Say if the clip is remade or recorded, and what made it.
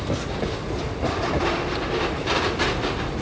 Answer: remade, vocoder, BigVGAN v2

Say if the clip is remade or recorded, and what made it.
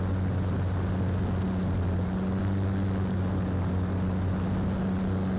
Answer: recorded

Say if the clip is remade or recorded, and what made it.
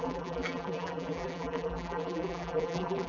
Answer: remade, vocoder, BigVGAN v2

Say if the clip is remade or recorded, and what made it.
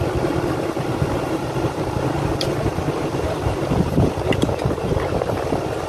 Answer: remade, vocoder, BigVGAN v2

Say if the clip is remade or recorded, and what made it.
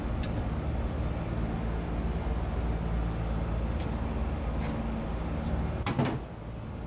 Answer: recorded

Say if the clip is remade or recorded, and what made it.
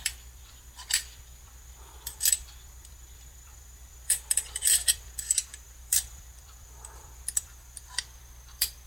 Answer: remade, vocoder, BigVGAN v2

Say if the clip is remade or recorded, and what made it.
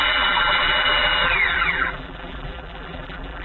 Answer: remade, vocoder, BigVGAN v2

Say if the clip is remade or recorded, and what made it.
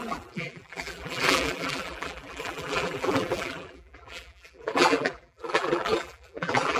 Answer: remade, vocoder, BigVGAN v2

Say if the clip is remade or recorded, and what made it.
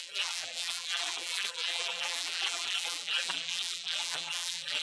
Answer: remade, vocoder, BigVGAN v2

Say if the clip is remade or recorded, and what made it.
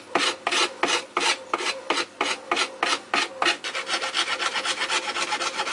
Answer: recorded